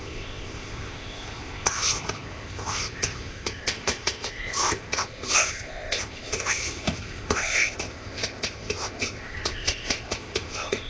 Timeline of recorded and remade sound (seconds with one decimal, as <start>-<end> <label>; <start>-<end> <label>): 0.0-10.9 remade